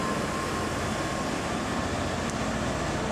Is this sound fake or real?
real